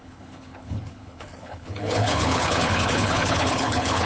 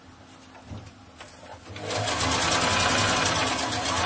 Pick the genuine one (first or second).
second